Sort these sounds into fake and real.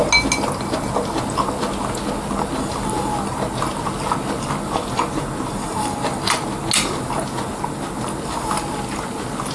real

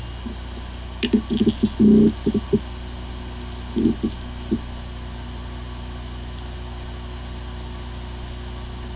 real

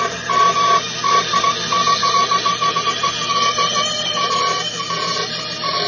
real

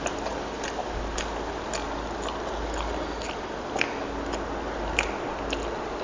real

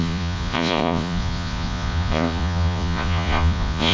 fake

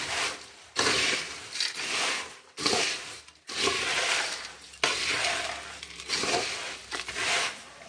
real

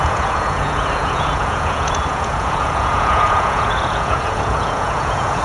fake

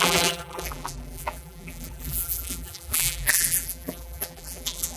fake